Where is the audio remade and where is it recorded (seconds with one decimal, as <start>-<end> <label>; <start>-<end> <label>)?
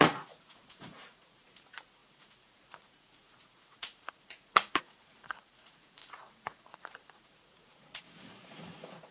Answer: 0.0-9.1 remade